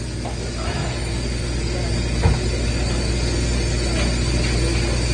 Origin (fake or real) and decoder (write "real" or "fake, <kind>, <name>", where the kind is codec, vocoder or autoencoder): real